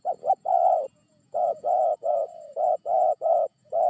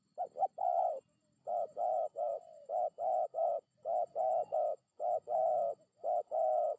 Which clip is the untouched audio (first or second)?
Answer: second